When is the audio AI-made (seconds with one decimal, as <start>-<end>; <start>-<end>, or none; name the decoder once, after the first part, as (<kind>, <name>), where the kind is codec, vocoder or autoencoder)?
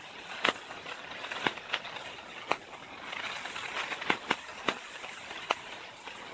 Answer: none